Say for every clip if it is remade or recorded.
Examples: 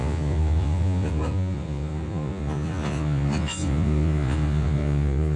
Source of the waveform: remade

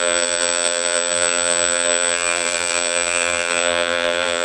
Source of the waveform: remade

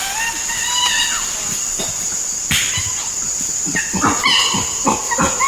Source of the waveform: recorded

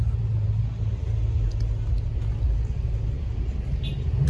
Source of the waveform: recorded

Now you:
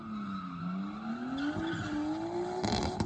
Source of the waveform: recorded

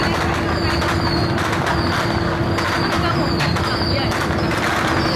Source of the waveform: recorded